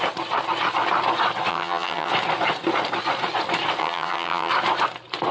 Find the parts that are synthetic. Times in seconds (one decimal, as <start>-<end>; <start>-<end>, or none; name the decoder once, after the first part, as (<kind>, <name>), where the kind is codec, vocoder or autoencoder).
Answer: 1.5-2.1 (vocoder, HiFi-GAN); 3.8-4.5